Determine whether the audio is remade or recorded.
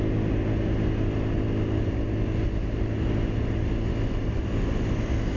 recorded